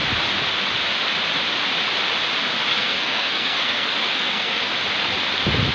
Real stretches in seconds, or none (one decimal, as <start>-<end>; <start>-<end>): 0.0-2.7; 4.7-5.7